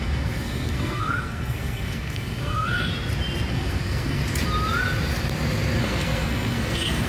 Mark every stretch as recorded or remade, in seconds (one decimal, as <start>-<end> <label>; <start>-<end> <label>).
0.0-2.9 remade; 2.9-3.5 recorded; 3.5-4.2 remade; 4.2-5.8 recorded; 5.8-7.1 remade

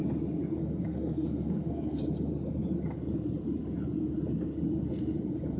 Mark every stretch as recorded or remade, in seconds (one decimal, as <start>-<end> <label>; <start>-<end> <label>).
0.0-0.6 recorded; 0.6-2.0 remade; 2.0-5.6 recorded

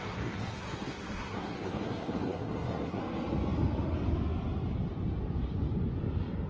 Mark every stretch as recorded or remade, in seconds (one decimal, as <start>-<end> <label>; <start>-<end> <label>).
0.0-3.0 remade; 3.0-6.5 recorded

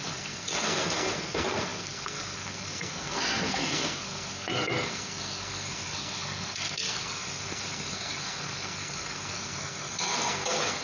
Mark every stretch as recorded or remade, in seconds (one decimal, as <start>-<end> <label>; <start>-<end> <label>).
0.0-10.8 remade

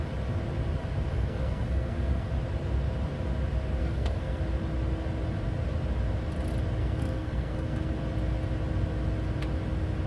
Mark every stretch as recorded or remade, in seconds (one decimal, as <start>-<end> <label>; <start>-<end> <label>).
0.0-1.1 recorded; 1.1-2.3 remade; 2.3-3.8 recorded; 3.8-4.4 remade; 4.4-6.8 recorded; 6.8-7.9 remade; 7.9-10.1 recorded

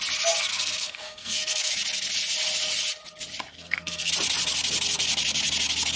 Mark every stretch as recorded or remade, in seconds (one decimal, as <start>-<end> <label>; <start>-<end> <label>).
0.0-0.5 recorded; 0.5-1.7 remade; 1.7-3.5 recorded; 3.5-4.1 remade; 4.1-6.0 recorded

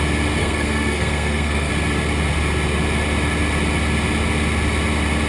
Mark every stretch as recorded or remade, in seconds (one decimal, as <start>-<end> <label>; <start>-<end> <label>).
0.0-0.4 recorded; 0.4-1.7 remade; 1.7-5.3 recorded

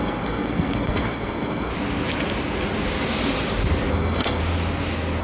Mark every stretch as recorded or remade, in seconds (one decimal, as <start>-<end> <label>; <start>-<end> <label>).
0.0-1.7 remade; 1.7-3.9 recorded; 3.9-4.4 remade; 4.4-5.2 recorded